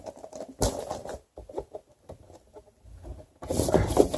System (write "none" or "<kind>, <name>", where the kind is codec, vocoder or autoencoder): none